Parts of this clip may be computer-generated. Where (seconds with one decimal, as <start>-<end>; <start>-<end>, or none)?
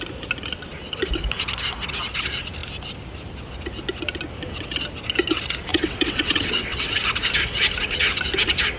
5.7-6.9